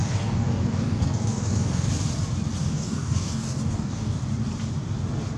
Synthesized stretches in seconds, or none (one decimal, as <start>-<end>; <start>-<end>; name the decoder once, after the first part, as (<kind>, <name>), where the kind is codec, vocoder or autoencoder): 0.0-1.9 (codec, DAC); 2.6-4.2